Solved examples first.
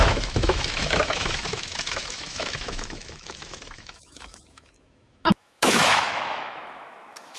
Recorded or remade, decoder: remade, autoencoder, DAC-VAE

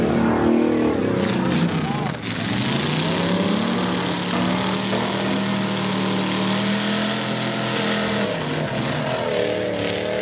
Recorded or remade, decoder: recorded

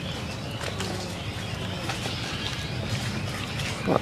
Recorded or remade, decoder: recorded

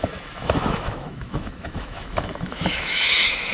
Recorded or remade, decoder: remade, autoencoder, DAC-VAE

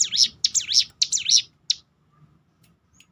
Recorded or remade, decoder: recorded